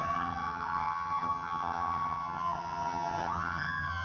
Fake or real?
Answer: fake